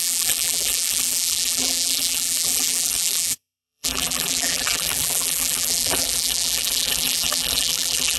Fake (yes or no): yes